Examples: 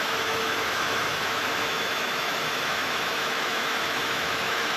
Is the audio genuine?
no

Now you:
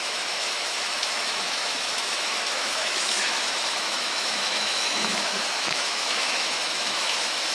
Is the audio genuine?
no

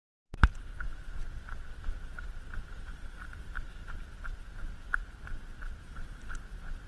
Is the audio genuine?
yes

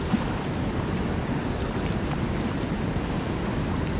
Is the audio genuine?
no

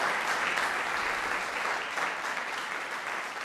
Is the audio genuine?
yes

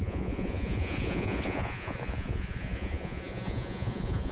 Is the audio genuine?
no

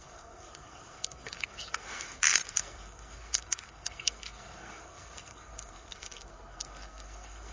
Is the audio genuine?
no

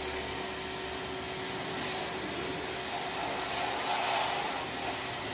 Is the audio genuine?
yes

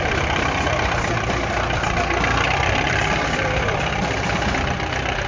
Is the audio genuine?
no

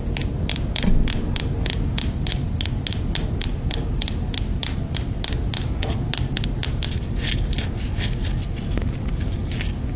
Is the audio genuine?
yes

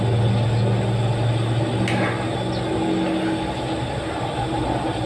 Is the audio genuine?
yes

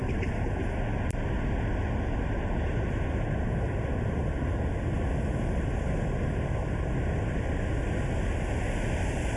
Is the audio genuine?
yes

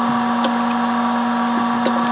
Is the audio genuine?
yes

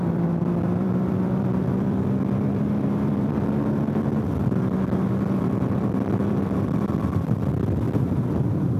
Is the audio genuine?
no